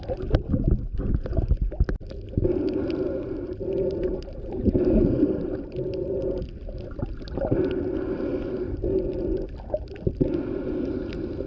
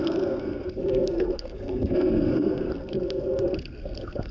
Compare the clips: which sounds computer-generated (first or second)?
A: second